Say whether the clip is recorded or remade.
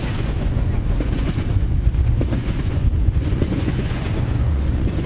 remade